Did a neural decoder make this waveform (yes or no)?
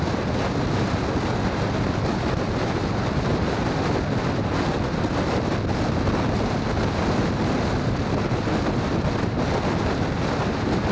no